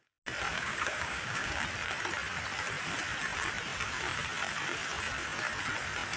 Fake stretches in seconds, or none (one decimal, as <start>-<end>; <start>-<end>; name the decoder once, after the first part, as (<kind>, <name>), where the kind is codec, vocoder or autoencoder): 0.5-1.6 (codec, DAC)